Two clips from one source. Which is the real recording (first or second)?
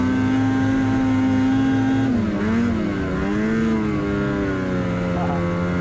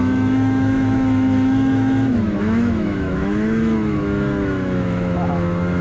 first